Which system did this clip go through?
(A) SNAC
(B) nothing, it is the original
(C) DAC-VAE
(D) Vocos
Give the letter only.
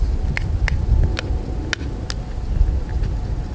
B